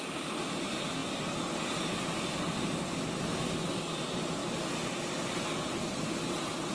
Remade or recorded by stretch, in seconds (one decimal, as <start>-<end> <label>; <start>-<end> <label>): 0.0-6.7 recorded